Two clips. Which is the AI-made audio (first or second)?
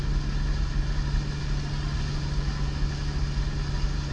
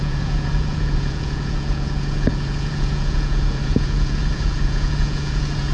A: second